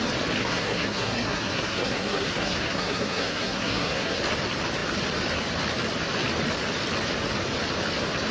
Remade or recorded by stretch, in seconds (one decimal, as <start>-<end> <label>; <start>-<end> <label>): 0.0-0.4 recorded; 0.4-4.2 remade; 4.2-8.3 recorded